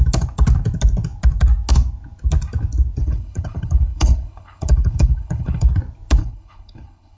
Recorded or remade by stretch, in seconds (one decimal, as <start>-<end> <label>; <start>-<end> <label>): 0.0-3.0 recorded; 3.0-5.7 remade; 5.7-6.2 recorded; 6.2-7.2 remade